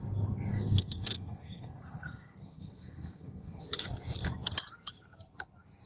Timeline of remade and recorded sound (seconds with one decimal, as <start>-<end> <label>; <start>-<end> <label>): 0.0-0.5 recorded; 0.5-3.6 remade; 3.6-5.9 recorded